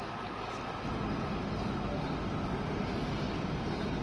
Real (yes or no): yes